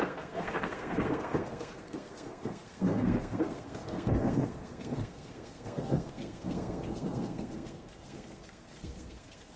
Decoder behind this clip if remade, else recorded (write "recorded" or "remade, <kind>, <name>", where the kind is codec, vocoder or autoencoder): remade, codec, SNAC